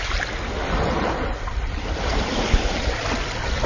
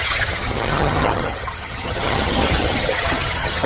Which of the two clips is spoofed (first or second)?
second